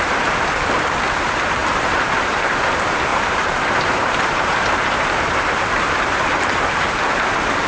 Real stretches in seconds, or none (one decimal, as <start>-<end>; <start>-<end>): 0.0-1.6; 2.4-3.1